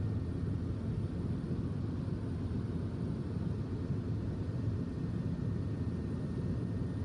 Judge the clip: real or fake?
real